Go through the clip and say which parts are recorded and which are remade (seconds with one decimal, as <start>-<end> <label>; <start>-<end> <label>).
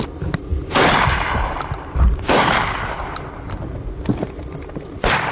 0.0-5.3 recorded